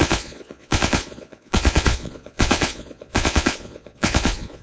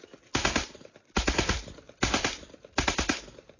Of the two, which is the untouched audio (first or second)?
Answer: second